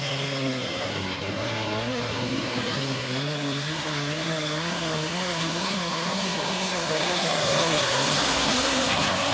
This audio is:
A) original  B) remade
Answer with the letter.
B